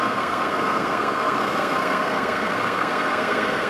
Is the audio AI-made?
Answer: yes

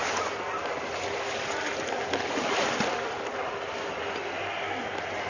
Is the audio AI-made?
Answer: no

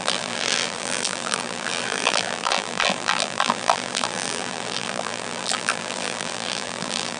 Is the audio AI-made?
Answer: yes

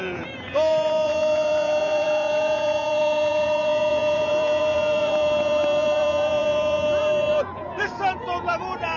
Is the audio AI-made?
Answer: yes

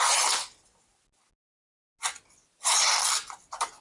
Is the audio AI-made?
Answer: no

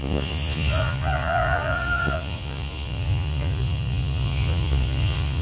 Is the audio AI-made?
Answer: yes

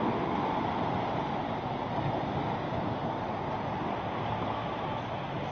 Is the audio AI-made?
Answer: no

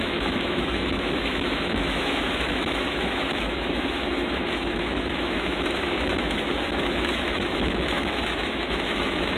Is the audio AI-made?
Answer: yes